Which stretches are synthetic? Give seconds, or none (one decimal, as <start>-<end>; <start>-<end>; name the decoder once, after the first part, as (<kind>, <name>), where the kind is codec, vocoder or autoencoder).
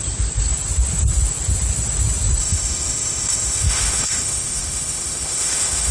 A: 2.4-5.9 (autoencoder, DAC-VAE)